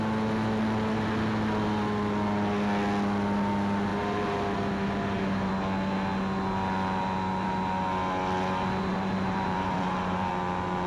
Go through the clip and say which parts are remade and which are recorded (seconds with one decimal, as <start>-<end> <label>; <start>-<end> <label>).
0.0-3.9 recorded; 3.9-5.5 remade; 5.5-8.9 recorded; 8.9-10.3 remade; 10.3-10.9 recorded